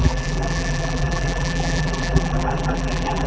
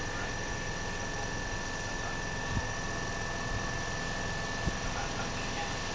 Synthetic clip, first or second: first